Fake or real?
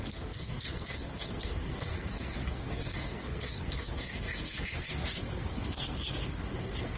fake